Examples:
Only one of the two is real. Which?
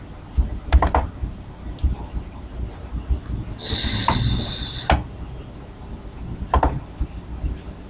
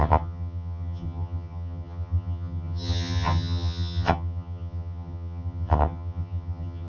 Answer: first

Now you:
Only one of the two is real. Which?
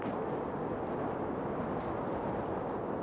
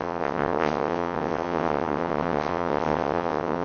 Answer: first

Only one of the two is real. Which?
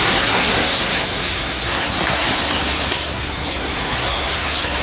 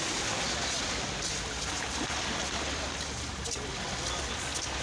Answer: second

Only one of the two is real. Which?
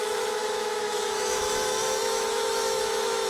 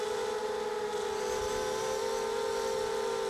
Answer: second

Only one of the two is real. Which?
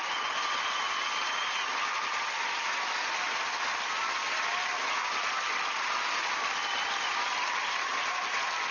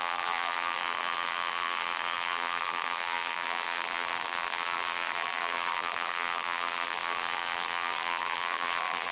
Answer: first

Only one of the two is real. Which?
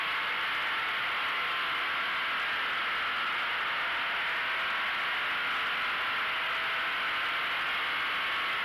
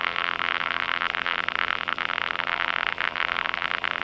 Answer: first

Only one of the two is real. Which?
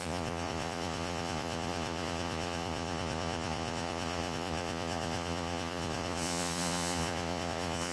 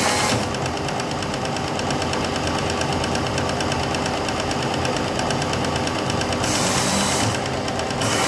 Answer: second